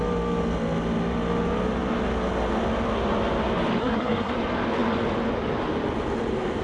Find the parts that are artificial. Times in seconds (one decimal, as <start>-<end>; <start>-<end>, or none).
3.8-4.3